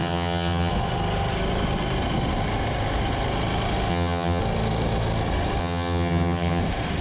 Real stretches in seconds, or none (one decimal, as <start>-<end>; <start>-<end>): 0.7-3.9; 4.4-5.6; 6.6-7.0